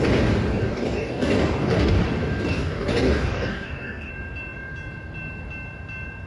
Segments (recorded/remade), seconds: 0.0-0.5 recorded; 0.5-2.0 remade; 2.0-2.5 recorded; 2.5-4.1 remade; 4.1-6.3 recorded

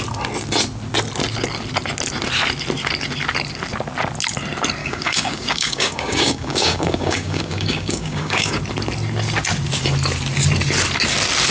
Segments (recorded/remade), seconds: 0.0-4.8 recorded; 4.8-8.6 remade; 8.6-11.5 recorded